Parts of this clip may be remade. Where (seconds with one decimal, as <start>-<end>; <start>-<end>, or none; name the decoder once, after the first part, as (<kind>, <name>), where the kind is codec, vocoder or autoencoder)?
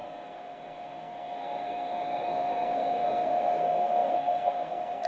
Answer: 0.0-5.1 (codec, SNAC)